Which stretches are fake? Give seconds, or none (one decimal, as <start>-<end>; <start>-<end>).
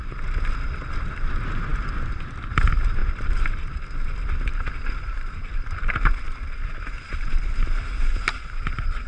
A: 3.0-7.7